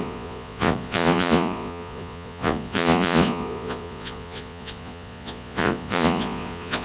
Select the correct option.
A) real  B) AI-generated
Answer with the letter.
B